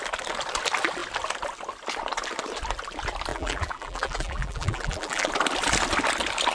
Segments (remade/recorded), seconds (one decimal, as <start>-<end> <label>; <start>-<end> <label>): 0.0-3.3 recorded; 3.3-5.3 remade; 5.3-6.5 recorded